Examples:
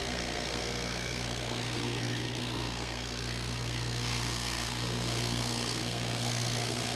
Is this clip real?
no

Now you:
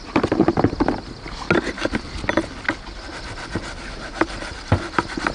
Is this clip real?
yes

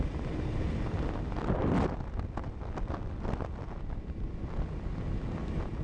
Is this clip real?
yes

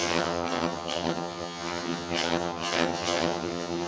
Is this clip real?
no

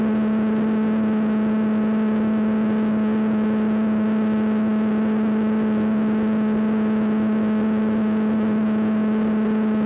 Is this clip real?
yes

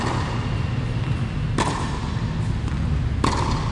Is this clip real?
yes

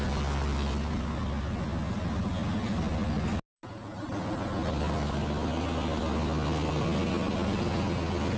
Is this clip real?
yes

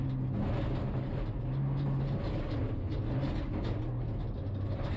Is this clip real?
yes